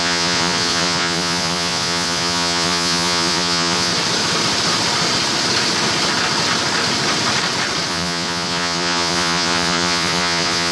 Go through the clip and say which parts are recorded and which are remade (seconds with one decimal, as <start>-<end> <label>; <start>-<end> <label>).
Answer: 0.0-3.9 remade; 3.9-7.9 recorded; 7.9-10.7 remade